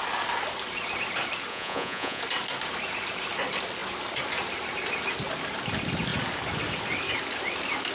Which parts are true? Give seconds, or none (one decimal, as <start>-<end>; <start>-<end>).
0.0-1.5; 2.2-7.9